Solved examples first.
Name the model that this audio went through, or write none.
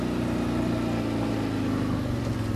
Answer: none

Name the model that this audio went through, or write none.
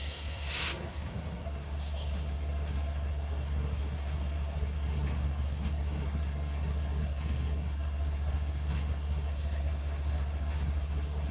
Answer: codec, SNAC